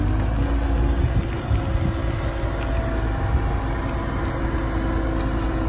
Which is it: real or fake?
real